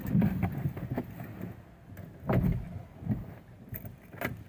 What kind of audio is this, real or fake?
real